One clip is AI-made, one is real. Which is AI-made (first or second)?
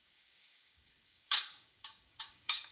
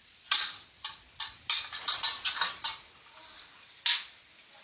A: first